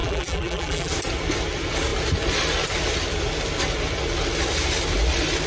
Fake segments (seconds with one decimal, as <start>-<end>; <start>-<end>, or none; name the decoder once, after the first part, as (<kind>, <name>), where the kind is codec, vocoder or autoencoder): 0.0-0.9 (vocoder, BigVGAN v2)

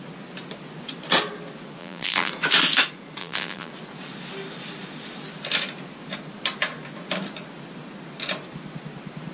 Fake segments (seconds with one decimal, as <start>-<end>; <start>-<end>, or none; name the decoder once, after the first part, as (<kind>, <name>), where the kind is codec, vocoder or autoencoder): 1.8-2.3 (vocoder, BigVGAN v2); 3.2-3.7

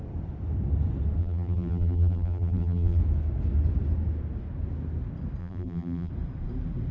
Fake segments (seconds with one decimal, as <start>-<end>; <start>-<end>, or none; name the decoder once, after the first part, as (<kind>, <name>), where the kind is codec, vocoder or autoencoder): 1.2-3.0 (vocoder, BigVGAN v2); 5.4-6.1

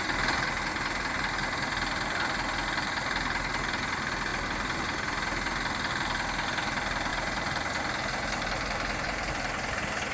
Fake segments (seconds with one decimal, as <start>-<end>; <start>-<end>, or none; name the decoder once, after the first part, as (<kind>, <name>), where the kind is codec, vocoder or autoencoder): 7.1-9.3 (vocoder, BigVGAN v2)

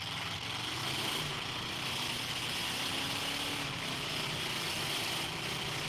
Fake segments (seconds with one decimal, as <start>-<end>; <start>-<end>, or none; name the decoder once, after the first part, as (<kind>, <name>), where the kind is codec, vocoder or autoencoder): 0.8-2.1 (vocoder, BigVGAN v2); 2.6-3.2; 4.1-4.7

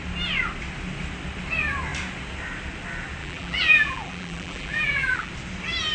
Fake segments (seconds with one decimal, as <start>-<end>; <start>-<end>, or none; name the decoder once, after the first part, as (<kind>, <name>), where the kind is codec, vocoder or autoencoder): 3.2-5.3 (vocoder, BigVGAN v2)

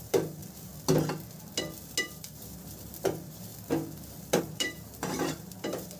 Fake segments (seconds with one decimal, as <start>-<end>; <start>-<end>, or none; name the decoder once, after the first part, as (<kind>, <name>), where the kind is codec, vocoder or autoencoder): 0.0-0.4 (vocoder, BigVGAN v2); 2.0-3.5; 4.4-6.0